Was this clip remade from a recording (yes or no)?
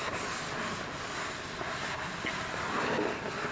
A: no